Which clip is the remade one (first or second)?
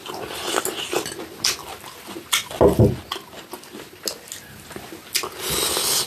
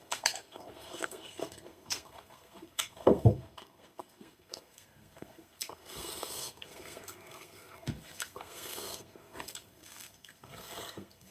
second